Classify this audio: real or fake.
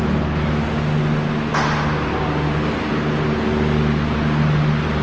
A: real